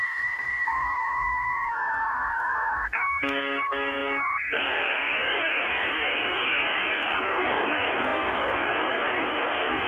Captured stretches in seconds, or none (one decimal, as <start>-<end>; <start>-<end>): none